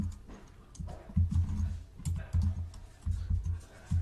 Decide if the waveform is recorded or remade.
recorded